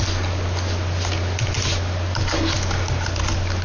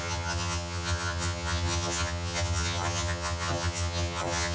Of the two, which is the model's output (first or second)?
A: second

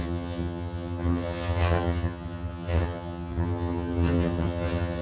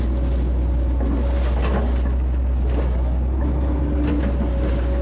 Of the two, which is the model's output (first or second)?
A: first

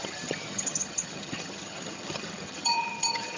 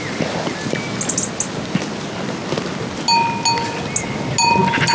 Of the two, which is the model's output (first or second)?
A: first